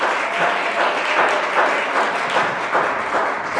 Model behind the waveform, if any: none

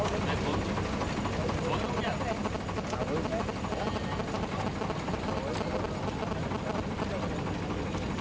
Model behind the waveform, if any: none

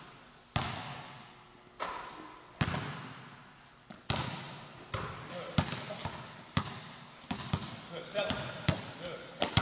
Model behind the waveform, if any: none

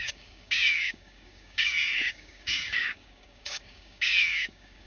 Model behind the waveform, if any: codec, DAC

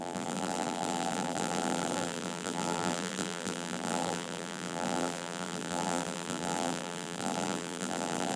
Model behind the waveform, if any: vocoder, BigVGAN v2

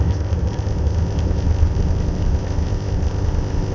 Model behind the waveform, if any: codec, ZipCodec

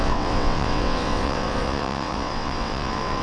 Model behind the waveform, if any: vocoder, WaveNeXt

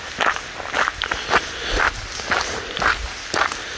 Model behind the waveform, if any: none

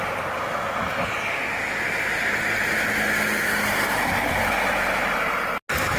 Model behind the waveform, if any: none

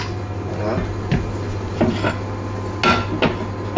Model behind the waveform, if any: none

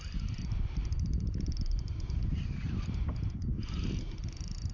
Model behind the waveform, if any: none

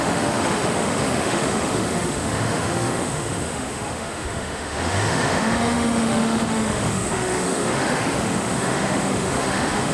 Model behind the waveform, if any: autoencoder, DAC-VAE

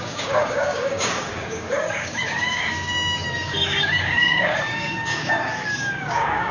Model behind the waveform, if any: codec, DAC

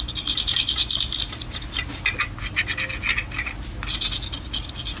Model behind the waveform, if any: none